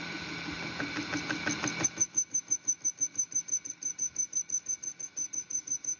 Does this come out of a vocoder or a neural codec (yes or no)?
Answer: no